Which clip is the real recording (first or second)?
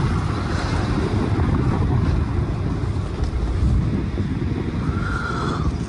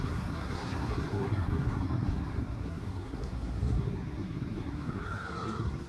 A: first